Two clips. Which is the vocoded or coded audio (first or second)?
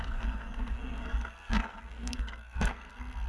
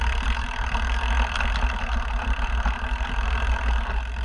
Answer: first